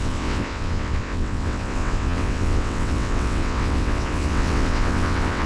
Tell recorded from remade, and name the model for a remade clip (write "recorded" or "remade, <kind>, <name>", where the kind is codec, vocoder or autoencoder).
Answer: remade, vocoder, WaveNeXt